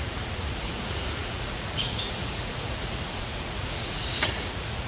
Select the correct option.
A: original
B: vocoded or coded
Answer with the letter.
B